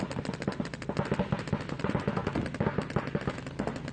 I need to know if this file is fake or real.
real